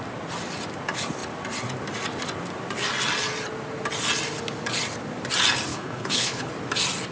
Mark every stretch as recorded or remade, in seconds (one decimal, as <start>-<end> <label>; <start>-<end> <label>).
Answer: 0.0-5.7 recorded; 5.7-6.5 remade; 6.5-7.1 recorded